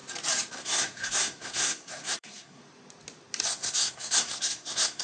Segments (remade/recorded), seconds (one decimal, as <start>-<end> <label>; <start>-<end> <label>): 0.0-0.5 recorded; 0.5-2.6 remade; 2.6-3.5 recorded; 3.5-5.0 remade